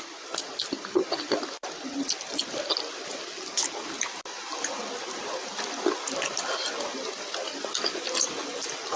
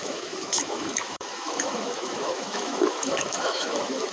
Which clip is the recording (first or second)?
first